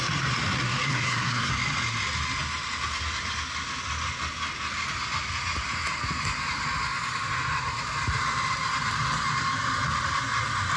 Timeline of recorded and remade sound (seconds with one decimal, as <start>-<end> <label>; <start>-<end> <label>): 0.0-0.9 recorded; 0.9-1.5 remade; 1.5-10.8 recorded

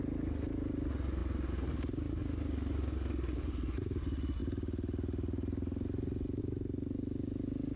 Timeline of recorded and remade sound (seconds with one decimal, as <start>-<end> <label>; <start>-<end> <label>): 0.0-7.8 recorded

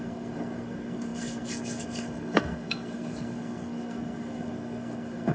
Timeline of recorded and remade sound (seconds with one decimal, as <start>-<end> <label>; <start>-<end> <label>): 0.0-5.3 remade

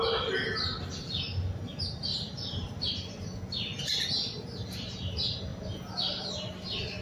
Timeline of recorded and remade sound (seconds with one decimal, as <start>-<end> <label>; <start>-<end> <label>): 0.0-2.1 recorded; 2.1-3.4 remade; 3.4-5.5 recorded; 5.5-6.3 remade; 6.3-7.0 recorded

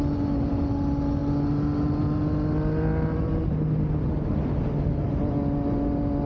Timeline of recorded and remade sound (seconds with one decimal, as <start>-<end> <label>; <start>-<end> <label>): 0.0-6.3 recorded

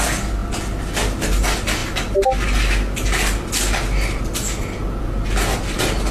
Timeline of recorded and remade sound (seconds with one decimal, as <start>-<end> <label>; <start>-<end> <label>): 0.0-6.1 recorded